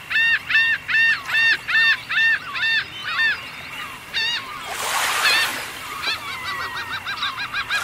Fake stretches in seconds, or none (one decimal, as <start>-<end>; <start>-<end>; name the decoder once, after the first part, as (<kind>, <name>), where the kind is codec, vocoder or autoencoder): 5.5-6.6 (vocoder, BigVGAN v2)